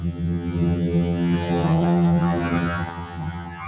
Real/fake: fake